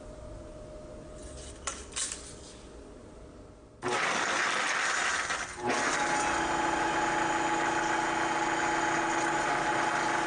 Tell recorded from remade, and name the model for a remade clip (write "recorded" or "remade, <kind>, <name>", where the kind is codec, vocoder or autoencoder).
recorded